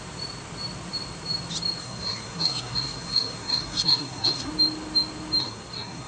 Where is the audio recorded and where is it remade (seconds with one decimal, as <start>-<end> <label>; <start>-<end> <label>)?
0.0-1.8 recorded; 1.8-4.5 remade; 4.5-5.4 recorded; 5.4-6.1 remade